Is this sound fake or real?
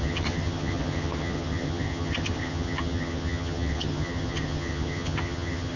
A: fake